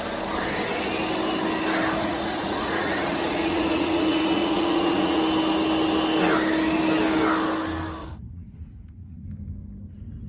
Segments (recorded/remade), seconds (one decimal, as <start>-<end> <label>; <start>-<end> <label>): 0.0-2.0 recorded; 2.0-5.2 remade; 5.2-8.0 recorded; 8.0-9.2 remade; 9.2-10.3 recorded